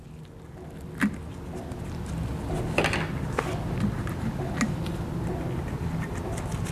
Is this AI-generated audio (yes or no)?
no